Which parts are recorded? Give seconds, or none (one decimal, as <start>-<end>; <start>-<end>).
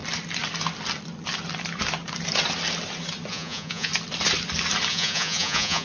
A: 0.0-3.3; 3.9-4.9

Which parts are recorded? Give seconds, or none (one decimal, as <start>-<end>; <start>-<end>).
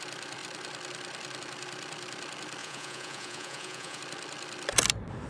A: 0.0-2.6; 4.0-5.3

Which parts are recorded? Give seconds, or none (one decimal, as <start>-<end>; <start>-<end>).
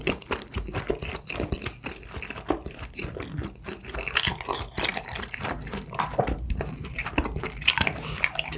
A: 0.0-8.6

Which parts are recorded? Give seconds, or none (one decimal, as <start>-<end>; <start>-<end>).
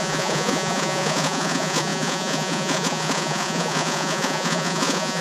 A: none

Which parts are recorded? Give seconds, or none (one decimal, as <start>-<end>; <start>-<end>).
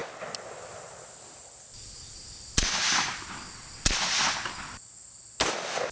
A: 0.0-5.9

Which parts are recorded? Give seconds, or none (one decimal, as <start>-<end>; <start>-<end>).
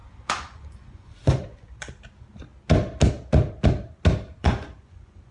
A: 1.9-4.4